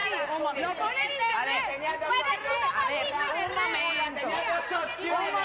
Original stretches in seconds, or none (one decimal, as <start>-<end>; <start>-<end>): 0.0-5.4